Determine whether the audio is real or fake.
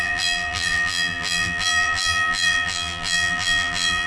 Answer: fake